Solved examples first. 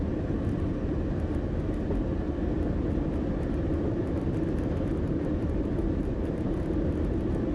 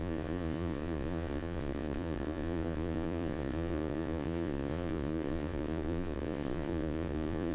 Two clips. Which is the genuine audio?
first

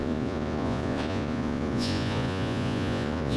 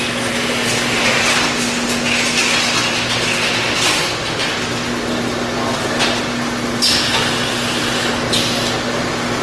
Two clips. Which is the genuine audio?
second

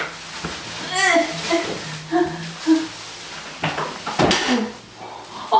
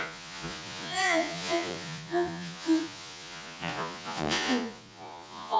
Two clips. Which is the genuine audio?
first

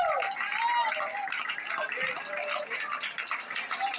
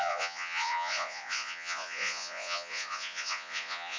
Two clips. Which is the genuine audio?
first